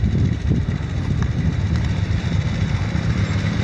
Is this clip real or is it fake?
fake